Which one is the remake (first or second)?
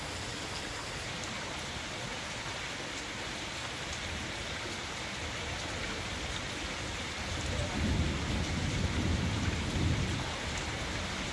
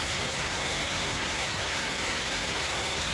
second